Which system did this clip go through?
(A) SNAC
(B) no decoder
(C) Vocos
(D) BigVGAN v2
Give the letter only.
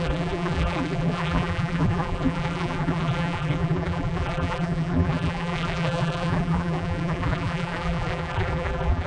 D